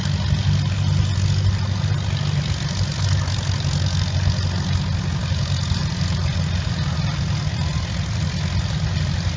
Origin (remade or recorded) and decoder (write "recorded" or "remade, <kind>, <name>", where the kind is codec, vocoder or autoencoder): recorded